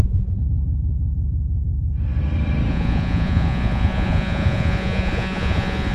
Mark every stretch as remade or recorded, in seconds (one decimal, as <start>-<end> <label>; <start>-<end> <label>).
0.0-0.4 remade; 0.4-2.7 recorded; 2.7-5.9 remade